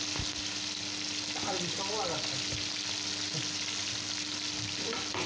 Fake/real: real